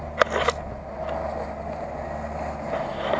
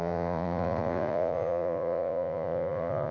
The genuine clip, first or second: first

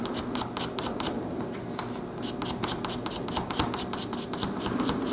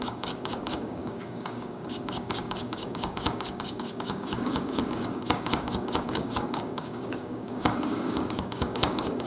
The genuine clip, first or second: first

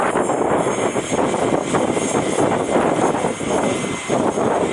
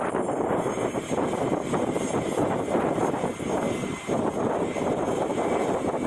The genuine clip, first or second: first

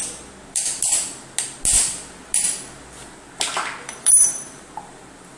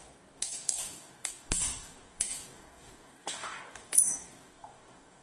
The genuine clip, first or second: first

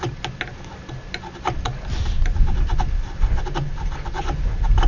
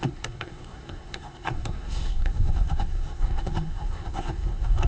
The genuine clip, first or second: first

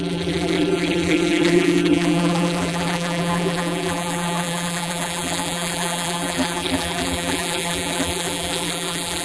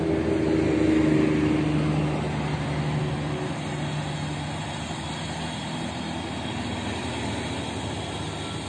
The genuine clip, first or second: second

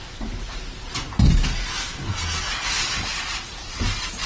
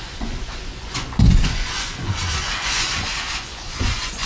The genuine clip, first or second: first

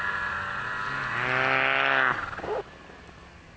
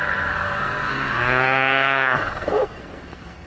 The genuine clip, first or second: first